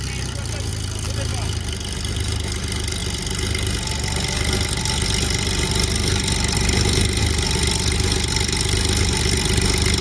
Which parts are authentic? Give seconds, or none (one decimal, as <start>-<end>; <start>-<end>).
0.0-0.7; 1.3-10.0